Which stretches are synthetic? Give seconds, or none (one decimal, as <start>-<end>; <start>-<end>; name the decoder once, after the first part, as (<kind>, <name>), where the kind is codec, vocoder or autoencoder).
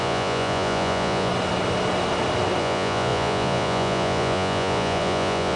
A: 0.0-1.3 (vocoder, Vocos); 2.6-5.6